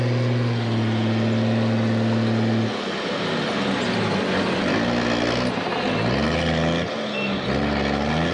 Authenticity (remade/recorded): recorded